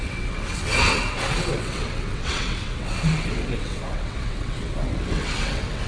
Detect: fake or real fake